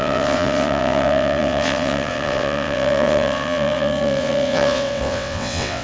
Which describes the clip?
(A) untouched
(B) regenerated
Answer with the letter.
B